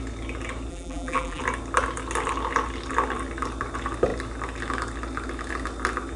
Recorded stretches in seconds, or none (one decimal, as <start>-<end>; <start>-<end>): 0.0-0.7; 1.4-6.2